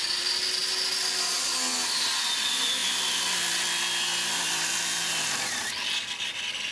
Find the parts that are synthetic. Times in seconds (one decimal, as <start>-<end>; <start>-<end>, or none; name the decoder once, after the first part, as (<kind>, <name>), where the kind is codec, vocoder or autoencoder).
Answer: none